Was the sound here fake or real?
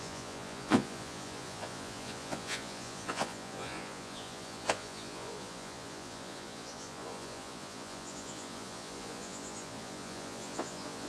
fake